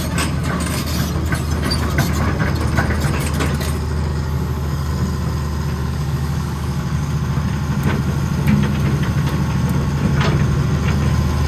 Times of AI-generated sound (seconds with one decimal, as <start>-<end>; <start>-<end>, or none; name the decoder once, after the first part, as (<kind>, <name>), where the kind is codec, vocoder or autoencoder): 4.1-4.9 (codec, DAC); 5.8-7.1